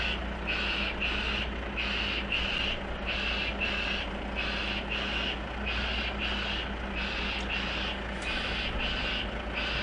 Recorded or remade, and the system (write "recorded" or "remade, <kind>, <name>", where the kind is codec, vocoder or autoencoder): recorded